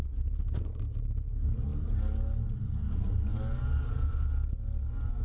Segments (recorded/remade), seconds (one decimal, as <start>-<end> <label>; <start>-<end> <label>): 0.0-5.2 recorded